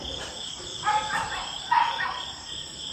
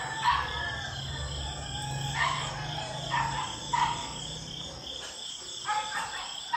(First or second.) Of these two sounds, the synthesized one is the first